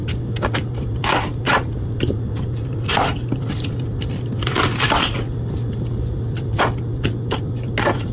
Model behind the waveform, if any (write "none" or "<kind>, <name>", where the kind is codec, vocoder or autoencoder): none